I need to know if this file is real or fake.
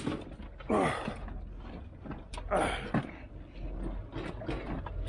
real